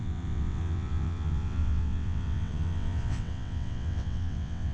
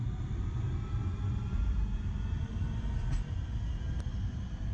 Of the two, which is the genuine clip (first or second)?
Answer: second